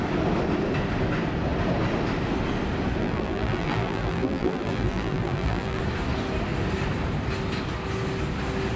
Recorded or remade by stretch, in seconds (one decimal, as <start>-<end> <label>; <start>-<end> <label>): 0.0-3.0 recorded; 3.0-5.8 remade; 5.8-8.8 recorded